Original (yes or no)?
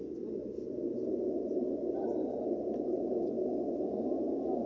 yes